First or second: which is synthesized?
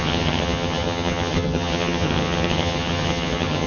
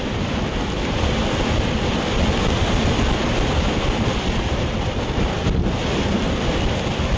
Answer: first